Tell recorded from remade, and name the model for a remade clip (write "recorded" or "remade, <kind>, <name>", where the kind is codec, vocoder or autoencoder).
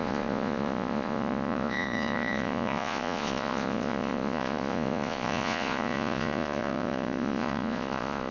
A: remade, vocoder, Vocos